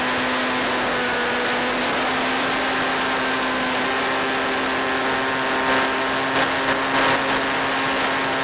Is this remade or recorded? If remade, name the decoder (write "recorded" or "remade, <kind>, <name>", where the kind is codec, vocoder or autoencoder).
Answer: recorded